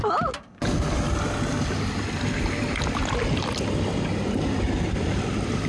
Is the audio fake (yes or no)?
no